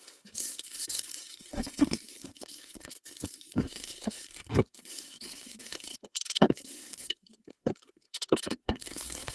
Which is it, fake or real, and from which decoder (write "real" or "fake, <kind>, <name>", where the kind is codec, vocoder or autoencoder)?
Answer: fake, codec, SNAC